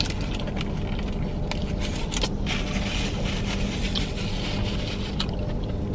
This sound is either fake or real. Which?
real